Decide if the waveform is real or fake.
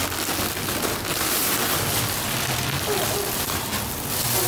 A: real